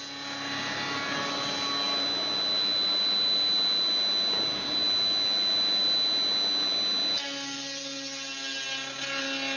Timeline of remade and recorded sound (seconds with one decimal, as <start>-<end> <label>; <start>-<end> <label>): 0.0-9.6 recorded